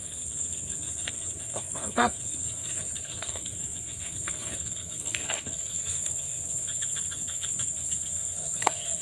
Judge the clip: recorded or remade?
remade